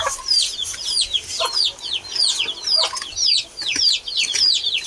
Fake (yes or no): no